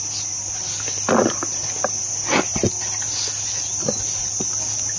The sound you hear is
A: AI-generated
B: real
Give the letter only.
B